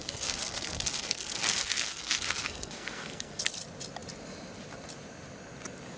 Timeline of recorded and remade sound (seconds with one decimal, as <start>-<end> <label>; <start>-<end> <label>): 0.0-3.4 remade; 3.4-6.0 recorded